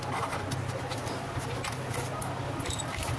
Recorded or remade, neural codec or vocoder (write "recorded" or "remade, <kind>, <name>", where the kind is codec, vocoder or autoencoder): recorded